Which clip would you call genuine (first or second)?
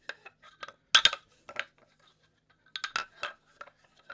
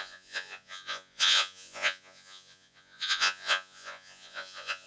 first